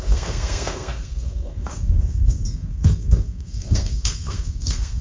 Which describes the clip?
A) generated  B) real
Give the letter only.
A